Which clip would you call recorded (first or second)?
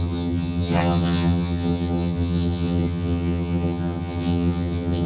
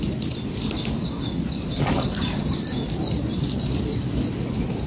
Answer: second